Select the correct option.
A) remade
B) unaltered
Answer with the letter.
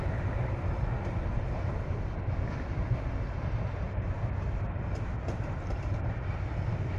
B